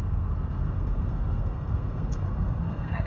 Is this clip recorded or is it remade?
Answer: remade